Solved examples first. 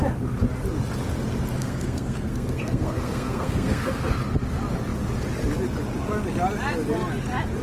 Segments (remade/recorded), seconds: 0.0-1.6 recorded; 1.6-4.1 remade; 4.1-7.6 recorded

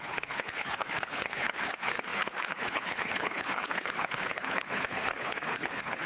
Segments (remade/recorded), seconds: 0.0-6.1 remade

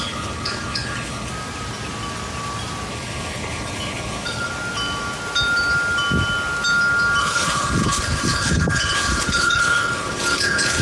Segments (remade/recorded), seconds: 0.0-1.3 remade; 1.3-2.9 recorded; 2.9-4.5 remade; 4.5-7.2 recorded; 7.2-10.8 remade